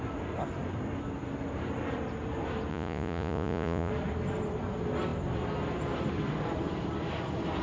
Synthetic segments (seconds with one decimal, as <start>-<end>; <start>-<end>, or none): 2.7-3.9